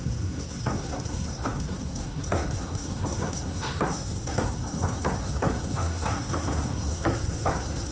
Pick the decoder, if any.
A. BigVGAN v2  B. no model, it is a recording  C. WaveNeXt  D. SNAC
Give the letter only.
D